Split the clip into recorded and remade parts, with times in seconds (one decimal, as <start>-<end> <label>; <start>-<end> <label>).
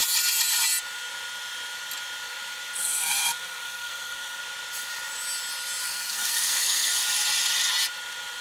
0.0-2.8 recorded; 2.8-4.4 remade; 4.4-5.8 recorded; 5.8-6.9 remade; 6.9-8.4 recorded